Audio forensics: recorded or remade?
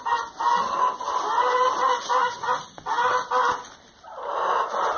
recorded